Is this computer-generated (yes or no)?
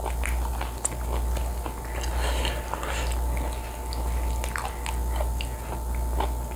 no